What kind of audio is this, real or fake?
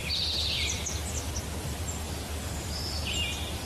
real